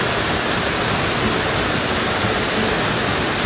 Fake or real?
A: real